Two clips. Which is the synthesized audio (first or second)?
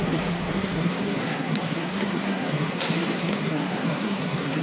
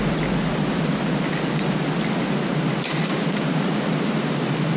first